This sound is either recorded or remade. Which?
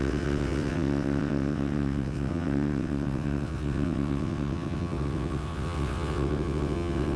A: remade